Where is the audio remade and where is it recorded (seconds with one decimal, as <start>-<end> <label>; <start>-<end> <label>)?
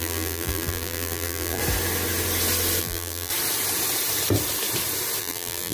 0.0-1.6 remade; 1.6-2.8 recorded; 2.8-3.3 remade; 3.3-5.2 recorded; 5.2-5.7 remade